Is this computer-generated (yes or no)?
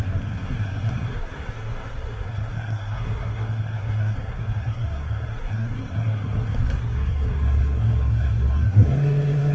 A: yes